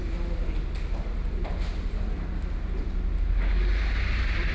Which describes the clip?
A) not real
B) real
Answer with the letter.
B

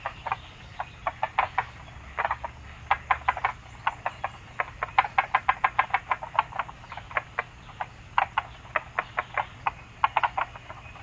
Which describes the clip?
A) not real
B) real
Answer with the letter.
B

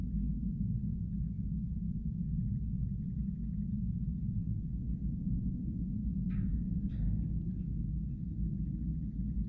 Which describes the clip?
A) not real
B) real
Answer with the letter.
B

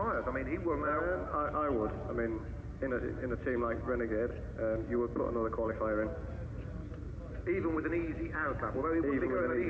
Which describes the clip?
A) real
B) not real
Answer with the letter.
A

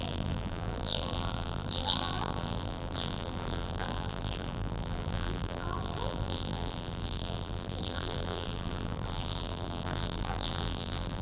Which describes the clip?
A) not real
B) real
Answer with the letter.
A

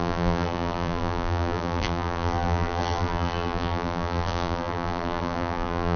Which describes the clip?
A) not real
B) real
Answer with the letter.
A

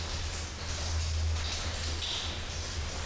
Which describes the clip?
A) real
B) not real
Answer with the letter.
A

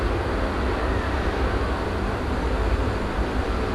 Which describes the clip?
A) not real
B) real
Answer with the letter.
B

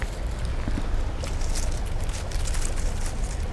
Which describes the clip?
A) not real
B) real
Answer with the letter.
B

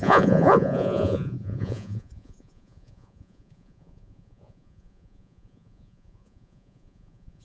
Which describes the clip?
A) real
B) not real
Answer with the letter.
B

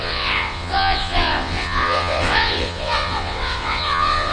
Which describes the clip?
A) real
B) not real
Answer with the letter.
B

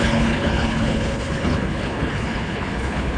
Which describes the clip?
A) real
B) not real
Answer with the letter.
B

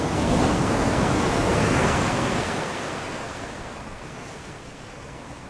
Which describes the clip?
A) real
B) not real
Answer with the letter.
B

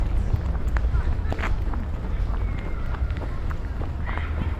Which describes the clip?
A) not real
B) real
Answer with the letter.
B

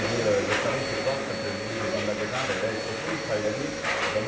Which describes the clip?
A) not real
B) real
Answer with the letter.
B